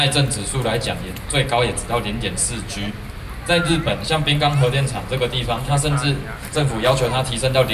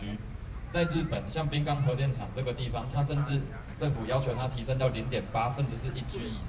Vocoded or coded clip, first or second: second